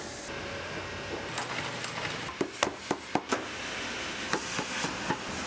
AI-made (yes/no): no